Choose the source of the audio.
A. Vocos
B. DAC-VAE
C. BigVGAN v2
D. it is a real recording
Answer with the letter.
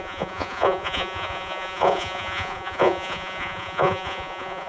A